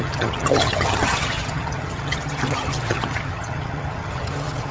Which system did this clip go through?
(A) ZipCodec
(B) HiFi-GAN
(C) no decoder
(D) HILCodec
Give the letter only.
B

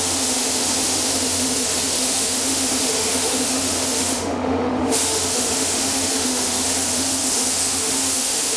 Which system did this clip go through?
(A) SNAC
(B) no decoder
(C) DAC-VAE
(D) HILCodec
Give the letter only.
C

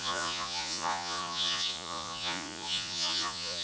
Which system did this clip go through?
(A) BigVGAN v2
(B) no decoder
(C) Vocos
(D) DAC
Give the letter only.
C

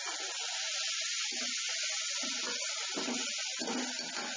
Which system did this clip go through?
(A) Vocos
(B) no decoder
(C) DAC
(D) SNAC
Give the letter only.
B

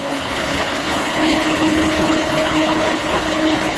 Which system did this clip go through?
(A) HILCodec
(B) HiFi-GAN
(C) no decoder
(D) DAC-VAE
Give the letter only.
A